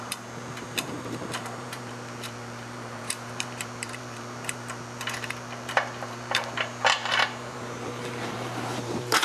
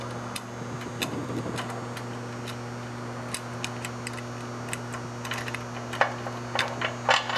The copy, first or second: first